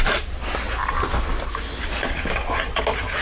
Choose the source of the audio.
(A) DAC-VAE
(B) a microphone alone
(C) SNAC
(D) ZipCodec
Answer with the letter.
B